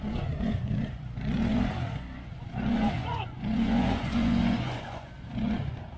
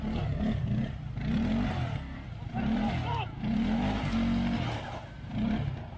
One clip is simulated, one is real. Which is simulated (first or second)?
first